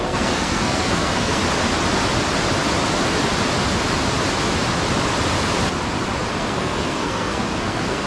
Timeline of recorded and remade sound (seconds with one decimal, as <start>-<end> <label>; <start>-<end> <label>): 0.0-1.4 remade; 1.4-6.3 recorded; 6.3-8.1 remade